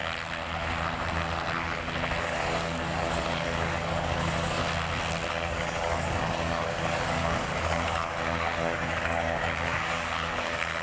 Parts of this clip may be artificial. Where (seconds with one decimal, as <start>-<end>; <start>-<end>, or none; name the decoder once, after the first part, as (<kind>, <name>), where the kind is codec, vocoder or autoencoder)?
2.2-4.6 (codec, DAC); 5.3-10.8